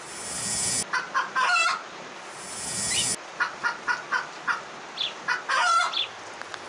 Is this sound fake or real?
real